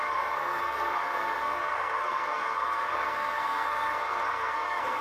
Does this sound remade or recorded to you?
remade